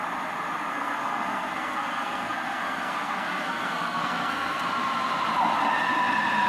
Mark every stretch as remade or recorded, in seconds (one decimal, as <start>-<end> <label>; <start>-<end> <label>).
0.0-0.7 recorded; 0.7-4.6 remade; 4.6-6.5 recorded